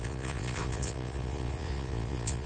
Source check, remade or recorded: remade